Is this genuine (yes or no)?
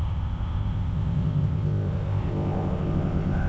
no